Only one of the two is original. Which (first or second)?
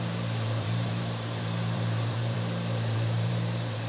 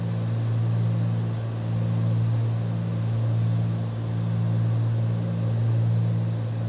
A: second